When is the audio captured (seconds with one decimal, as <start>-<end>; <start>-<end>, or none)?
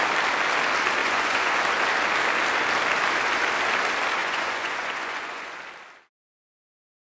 0.0-1.0; 1.6-4.2; 5.6-7.2